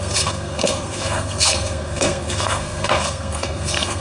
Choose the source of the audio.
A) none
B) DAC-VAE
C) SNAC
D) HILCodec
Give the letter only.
C